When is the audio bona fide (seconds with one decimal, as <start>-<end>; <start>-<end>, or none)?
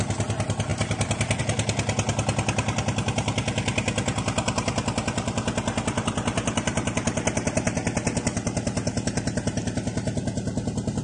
0.0-11.0